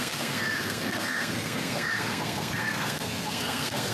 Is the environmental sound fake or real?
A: fake